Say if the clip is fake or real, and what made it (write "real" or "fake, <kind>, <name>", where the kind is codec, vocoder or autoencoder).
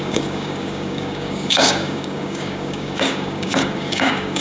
fake, codec, DAC